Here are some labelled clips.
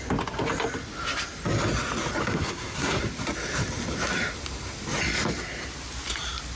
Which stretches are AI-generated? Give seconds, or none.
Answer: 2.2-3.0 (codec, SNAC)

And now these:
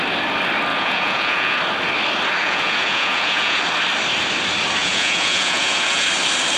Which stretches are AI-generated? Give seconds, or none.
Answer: 0.7-1.6 (vocoder, Vocos); 2.4-3.6; 4.8-6.1

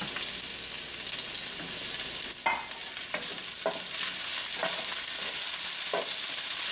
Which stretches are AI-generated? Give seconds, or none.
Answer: none

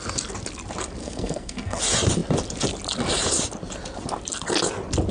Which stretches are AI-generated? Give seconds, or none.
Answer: 1.0-1.8 (codec, SNAC)

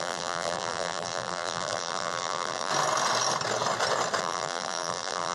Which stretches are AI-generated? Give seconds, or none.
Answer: 0.0-2.7 (vocoder, BigVGAN v2); 4.2-5.3

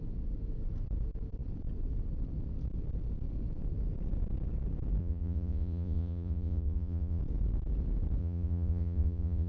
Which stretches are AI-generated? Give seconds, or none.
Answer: 5.0-7.2 (vocoder, Vocos); 8.2-9.5

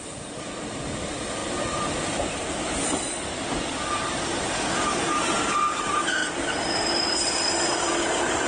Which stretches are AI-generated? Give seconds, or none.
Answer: none

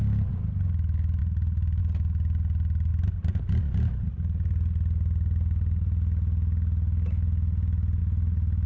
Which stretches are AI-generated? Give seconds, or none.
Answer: none